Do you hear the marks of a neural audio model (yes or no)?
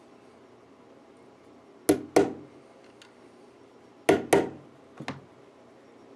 no